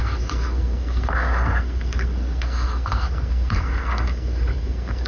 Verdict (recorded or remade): remade